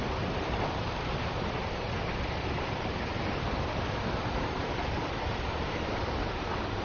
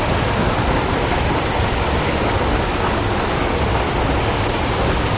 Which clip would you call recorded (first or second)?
second